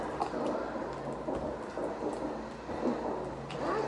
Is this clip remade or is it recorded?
recorded